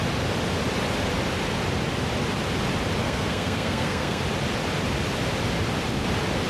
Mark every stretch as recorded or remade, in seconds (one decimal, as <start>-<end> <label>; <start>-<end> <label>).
0.0-3.0 recorded; 3.0-4.2 remade; 4.2-6.5 recorded